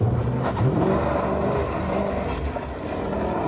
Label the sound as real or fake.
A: real